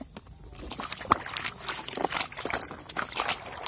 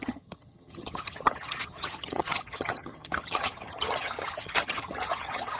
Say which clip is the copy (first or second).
second